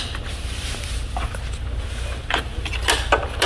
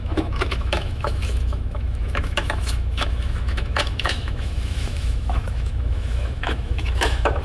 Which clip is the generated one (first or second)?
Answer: second